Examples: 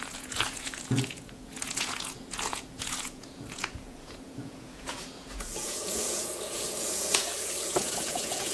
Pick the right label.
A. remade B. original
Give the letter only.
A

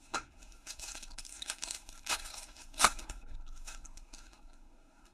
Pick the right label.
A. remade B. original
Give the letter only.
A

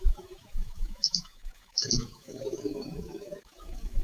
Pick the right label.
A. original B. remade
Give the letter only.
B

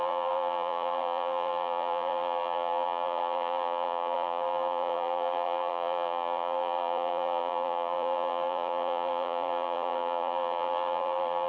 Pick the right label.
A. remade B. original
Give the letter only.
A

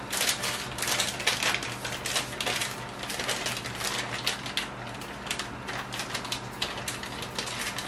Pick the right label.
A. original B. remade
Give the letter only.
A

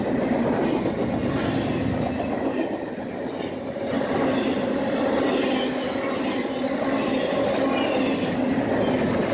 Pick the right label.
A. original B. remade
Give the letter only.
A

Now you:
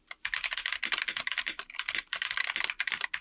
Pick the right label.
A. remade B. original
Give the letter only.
B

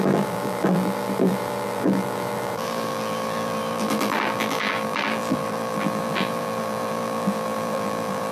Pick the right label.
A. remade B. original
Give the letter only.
A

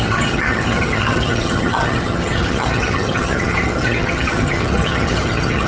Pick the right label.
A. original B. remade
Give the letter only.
B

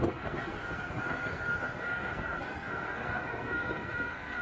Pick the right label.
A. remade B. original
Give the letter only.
A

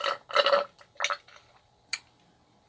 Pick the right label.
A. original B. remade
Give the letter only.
A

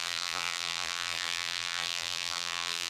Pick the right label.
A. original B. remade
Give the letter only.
B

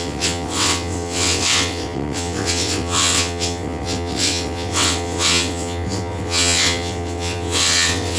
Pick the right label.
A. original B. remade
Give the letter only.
B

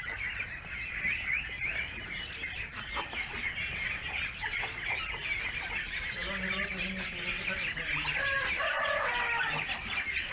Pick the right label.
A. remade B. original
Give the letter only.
B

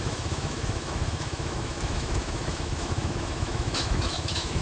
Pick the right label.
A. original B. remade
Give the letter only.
B